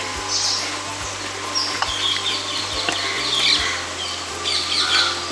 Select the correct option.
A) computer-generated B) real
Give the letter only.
B